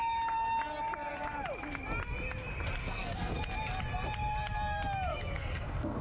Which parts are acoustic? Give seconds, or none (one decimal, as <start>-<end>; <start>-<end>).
0.0-2.8; 3.4-5.1